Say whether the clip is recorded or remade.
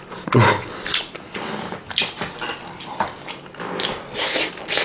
recorded